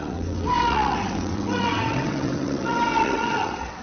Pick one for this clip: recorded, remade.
remade